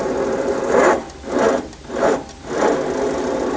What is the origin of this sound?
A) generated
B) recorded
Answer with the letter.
B